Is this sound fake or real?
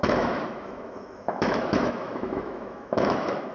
fake